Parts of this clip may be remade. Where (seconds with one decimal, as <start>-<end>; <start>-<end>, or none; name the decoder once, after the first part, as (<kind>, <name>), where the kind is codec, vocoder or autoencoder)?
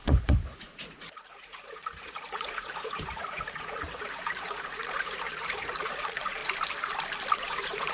0.0-6.4 (vocoder, Vocos); 7.3-7.9